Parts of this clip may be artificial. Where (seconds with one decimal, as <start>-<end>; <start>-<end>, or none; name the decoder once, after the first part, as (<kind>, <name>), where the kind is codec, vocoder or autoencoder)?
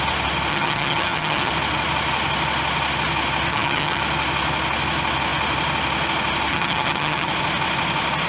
0.5-1.5 (vocoder, HiFi-GAN); 3.5-4.0; 6.5-7.3